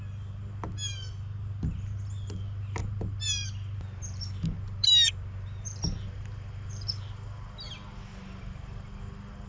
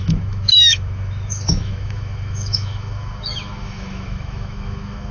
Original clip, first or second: first